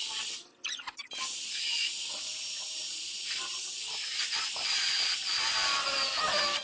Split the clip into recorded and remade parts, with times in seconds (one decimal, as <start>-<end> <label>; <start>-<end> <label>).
0.0-2.3 remade; 2.3-6.6 recorded